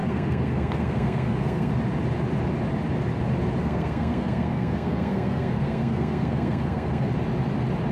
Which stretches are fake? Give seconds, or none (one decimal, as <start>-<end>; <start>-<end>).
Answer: 0.0-1.7; 3.6-7.1